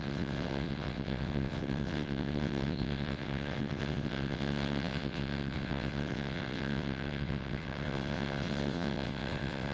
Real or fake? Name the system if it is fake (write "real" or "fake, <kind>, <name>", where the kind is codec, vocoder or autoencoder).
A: fake, vocoder, WaveNeXt